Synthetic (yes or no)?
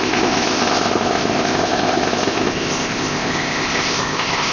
yes